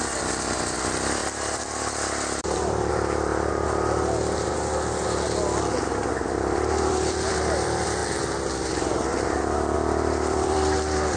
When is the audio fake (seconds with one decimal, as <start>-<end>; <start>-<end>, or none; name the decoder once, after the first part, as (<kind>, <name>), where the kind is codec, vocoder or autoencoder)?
0.0-3.3 (vocoder, BigVGAN v2); 6.1-8.0; 8.7-11.2